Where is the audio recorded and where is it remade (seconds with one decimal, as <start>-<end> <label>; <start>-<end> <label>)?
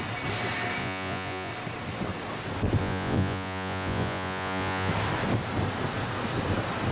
0.0-0.8 recorded; 0.8-1.5 remade; 1.5-2.8 recorded; 2.8-4.9 remade; 4.9-6.9 recorded